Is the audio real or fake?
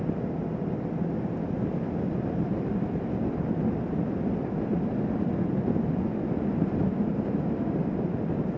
real